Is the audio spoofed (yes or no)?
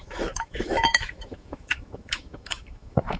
yes